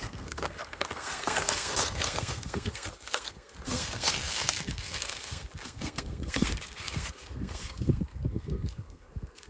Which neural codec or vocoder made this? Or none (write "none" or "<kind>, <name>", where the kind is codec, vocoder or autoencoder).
codec, SNAC